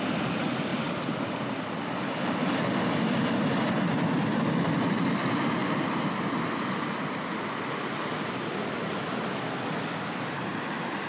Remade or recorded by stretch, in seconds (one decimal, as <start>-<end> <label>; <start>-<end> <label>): 0.0-11.1 recorded